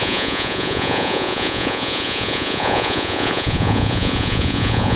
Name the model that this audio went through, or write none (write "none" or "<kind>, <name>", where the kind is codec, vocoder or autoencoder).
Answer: vocoder, Vocos